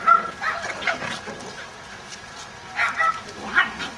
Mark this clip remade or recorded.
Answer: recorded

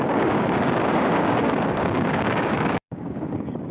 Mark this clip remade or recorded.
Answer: remade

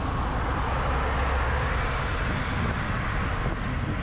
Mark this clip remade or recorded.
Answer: recorded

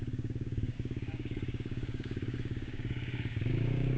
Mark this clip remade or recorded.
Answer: remade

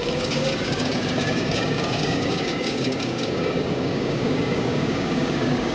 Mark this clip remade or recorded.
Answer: remade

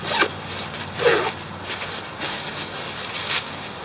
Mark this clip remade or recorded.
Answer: recorded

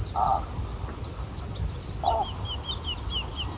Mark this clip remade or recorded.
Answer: recorded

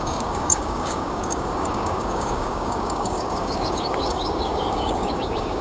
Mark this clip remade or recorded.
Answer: remade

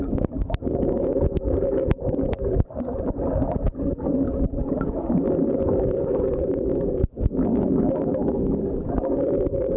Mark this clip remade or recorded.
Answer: remade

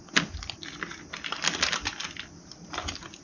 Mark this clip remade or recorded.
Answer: recorded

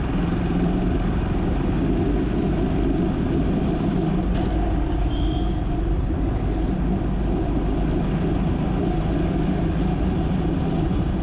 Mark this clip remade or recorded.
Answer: recorded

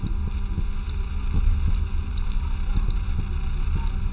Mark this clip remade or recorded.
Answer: recorded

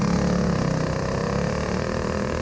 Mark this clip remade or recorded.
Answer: recorded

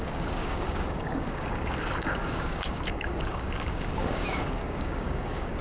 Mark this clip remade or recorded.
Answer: remade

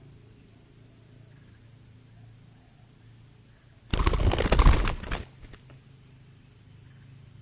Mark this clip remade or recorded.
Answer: recorded